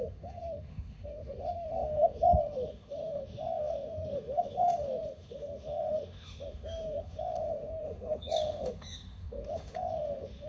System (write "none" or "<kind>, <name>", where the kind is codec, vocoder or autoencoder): autoencoder, DAC-VAE